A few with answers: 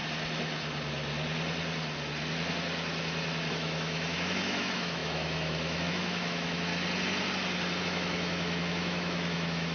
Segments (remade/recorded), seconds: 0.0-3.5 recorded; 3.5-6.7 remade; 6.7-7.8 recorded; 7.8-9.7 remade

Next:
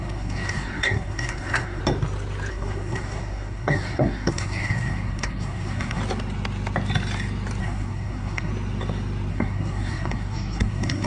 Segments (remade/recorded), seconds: 0.0-1.8 remade; 1.8-2.5 recorded; 2.5-6.0 remade; 6.0-7.6 recorded; 7.6-8.5 remade; 8.5-9.3 recorded; 9.3-11.1 remade

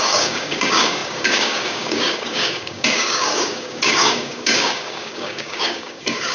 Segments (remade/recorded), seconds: 0.0-6.3 remade

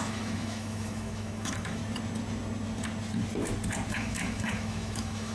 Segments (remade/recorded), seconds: 0.0-1.8 remade; 1.8-3.9 recorded; 3.9-5.3 remade

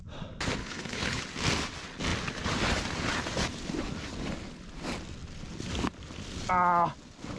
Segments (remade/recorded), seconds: 0.0-0.6 recorded; 0.6-1.2 remade; 1.2-7.4 recorded